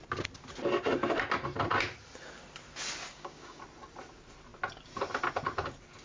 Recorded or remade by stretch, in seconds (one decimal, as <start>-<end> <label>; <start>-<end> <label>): 0.0-3.1 recorded; 3.1-3.6 remade; 3.6-6.0 recorded